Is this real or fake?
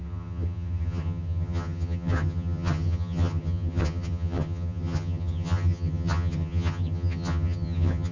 fake